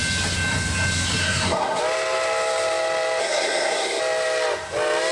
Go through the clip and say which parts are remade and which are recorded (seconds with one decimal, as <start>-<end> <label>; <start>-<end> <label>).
0.0-1.2 recorded; 1.2-1.8 remade; 1.8-3.2 recorded; 3.2-4.0 remade; 4.0-5.1 recorded